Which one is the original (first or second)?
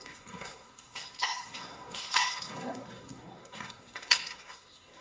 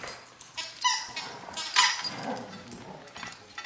second